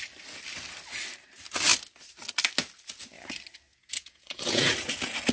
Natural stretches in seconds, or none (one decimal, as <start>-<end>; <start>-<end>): 0.0-3.7; 4.7-5.3